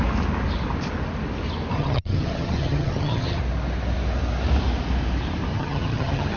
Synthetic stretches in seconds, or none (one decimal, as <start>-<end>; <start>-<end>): 1.7-3.4; 5.5-6.4